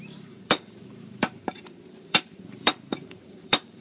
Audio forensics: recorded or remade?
remade